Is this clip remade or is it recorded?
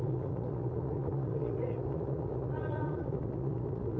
remade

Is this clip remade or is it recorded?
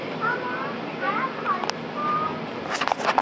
recorded